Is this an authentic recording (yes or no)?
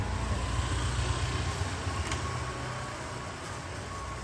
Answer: yes